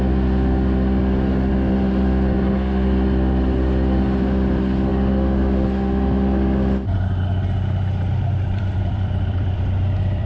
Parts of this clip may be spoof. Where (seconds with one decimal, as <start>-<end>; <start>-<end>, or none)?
0.0-1.0; 1.5-4.9; 8.3-10.3